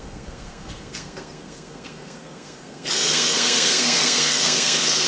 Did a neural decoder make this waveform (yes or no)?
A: yes